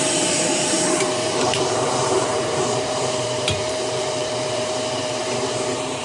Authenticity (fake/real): fake